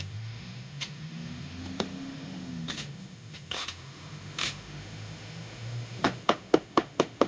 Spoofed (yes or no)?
yes